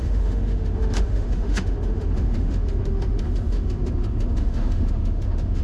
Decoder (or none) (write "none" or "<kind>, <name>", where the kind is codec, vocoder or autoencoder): autoencoder, DAC-VAE